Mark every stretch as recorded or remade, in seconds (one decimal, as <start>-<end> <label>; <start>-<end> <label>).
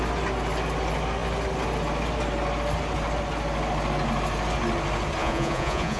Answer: 0.0-5.2 recorded; 5.2-6.0 remade